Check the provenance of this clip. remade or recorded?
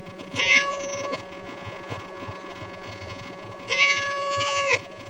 remade